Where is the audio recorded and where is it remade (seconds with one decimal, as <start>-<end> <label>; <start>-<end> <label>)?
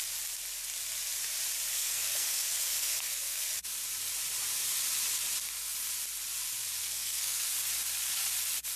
0.0-1.7 recorded; 1.7-3.5 remade; 3.5-6.8 recorded; 6.8-7.5 remade; 7.5-8.8 recorded